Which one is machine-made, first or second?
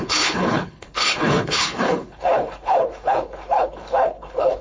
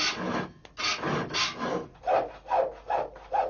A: first